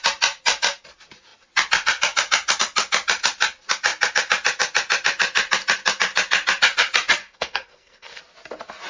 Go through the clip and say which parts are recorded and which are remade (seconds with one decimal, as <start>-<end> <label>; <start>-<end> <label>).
0.0-7.2 recorded; 7.2-8.2 remade; 8.2-8.9 recorded